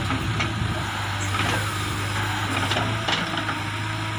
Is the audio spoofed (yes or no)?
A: no